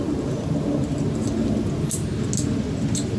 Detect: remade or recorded recorded